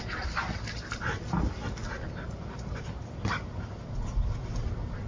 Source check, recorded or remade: recorded